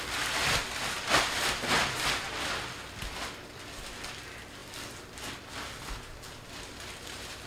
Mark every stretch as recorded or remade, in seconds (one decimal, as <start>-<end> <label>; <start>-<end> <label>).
0.0-7.5 recorded